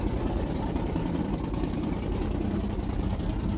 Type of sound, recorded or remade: remade